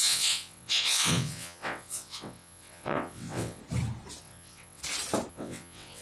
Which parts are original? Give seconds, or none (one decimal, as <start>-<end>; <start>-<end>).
3.6-4.2; 4.8-5.3